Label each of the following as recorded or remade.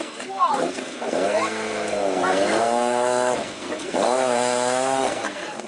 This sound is remade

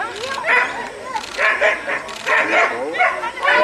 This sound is recorded